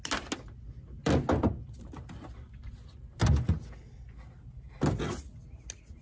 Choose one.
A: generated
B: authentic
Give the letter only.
B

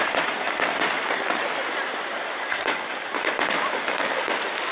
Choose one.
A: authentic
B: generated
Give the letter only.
B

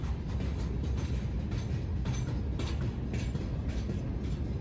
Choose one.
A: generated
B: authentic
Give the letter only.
B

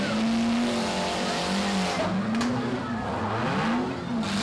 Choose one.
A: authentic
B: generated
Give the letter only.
A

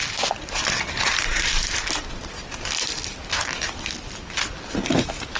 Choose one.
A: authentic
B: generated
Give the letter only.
A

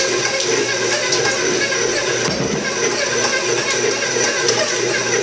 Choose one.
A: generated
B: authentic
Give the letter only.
B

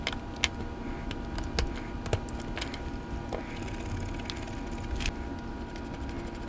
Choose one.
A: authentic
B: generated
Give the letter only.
A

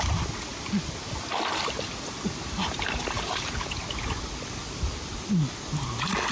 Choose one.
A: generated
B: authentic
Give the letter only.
B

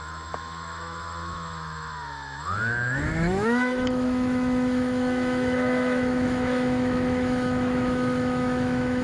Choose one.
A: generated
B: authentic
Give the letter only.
A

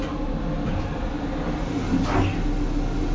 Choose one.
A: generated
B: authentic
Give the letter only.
B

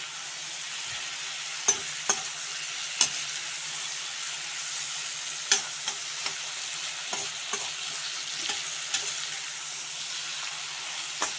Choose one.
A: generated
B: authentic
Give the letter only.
B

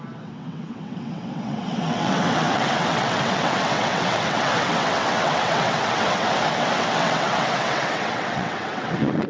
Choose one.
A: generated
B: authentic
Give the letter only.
A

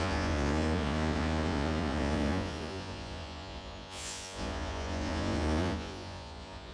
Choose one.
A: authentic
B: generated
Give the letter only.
B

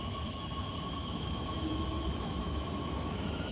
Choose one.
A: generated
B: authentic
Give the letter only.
A